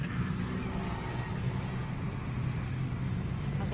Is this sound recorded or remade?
recorded